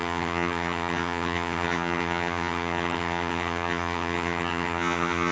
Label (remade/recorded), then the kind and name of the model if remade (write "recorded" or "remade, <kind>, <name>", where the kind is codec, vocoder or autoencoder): remade, vocoder, HiFi-GAN